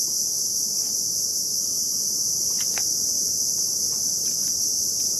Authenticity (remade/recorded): recorded